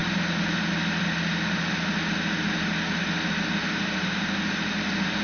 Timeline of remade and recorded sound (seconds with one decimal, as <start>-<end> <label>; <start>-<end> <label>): 0.0-5.2 recorded